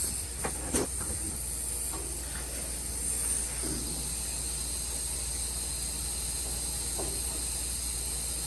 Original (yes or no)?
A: yes